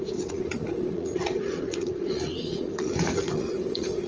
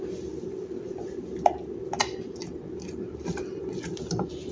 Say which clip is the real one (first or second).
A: second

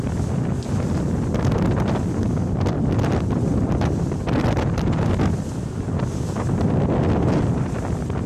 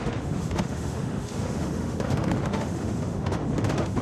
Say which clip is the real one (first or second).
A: first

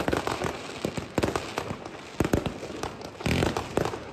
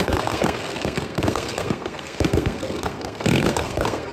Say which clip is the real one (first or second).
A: first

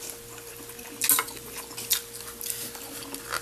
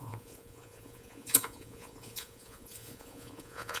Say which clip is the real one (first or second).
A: first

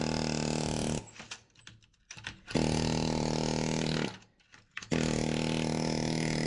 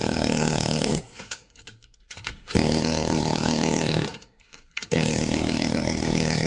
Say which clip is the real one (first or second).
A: first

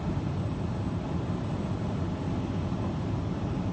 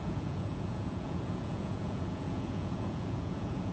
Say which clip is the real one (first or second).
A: first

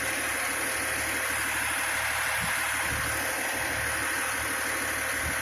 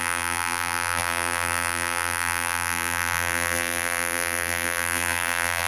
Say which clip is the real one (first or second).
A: first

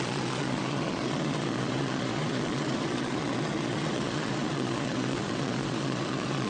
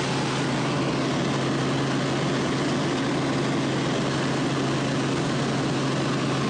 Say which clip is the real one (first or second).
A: second